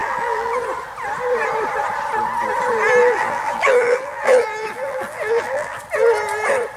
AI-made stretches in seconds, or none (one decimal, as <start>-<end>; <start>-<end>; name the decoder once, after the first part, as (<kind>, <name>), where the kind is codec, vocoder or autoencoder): 0.0-0.6 (vocoder, BigVGAN v2); 3.0-5.8